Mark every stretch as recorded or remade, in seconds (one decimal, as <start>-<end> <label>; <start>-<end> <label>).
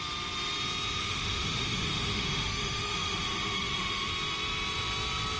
0.0-1.0 recorded; 1.0-4.1 remade; 4.1-5.4 recorded